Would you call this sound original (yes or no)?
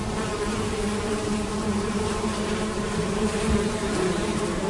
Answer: no